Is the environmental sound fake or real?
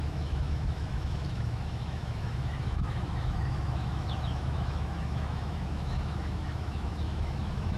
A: fake